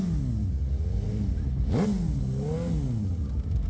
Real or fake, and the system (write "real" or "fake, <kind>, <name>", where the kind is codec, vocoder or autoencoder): real